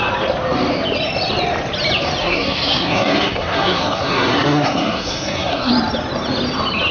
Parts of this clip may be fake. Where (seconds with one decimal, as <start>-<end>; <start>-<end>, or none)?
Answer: 2.2-5.7